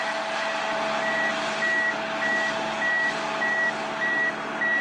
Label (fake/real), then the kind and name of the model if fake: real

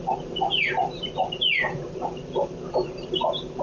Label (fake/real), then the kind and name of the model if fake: real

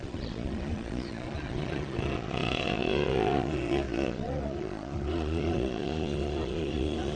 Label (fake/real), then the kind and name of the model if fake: fake, vocoder, Vocos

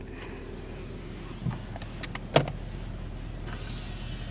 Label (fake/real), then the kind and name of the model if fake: real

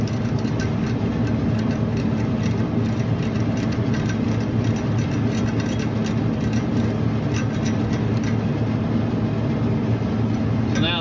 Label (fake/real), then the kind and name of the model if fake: real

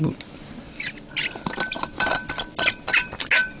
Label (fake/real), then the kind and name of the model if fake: real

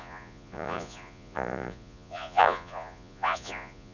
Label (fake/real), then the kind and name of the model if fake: fake, vocoder, Vocos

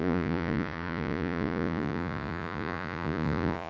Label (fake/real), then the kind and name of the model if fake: fake, vocoder, Vocos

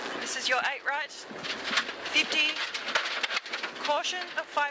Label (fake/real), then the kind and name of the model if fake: real